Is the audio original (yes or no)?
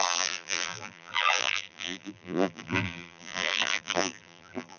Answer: no